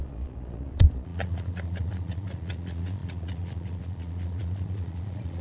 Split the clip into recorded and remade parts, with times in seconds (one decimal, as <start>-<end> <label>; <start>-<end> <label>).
0.0-5.4 remade